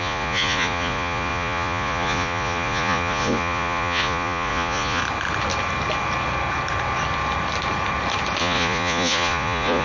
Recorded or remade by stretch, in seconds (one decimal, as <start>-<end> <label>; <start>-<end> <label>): 0.0-5.0 remade; 5.0-8.4 recorded; 8.4-9.8 remade